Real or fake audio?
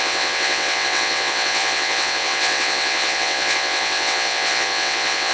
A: fake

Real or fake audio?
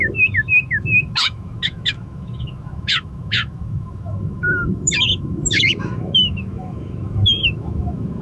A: fake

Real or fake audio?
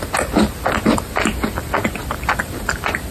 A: real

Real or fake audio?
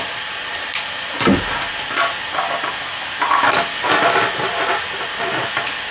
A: real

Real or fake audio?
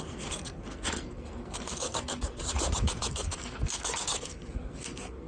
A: fake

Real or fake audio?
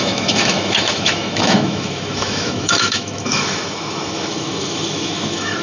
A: fake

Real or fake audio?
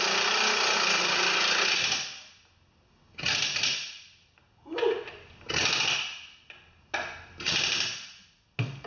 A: real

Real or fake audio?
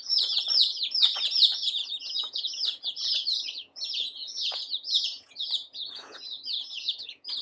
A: fake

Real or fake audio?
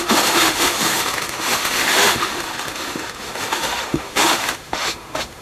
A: fake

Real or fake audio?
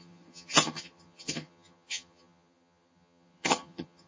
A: fake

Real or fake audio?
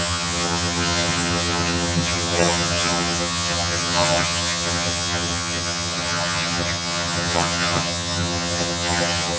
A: fake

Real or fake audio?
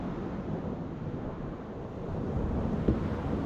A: real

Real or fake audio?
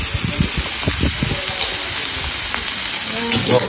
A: real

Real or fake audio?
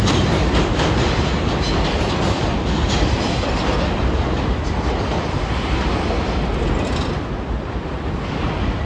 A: real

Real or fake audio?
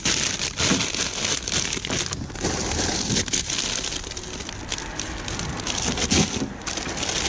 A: real